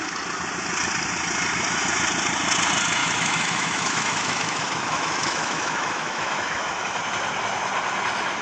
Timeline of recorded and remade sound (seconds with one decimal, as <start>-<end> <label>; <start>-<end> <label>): 0.0-3.0 recorded; 3.0-7.0 remade; 7.0-8.4 recorded